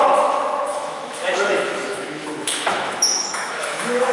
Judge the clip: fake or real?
fake